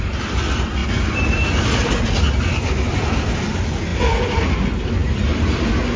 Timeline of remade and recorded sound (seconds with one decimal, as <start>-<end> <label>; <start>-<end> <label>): 0.0-6.0 recorded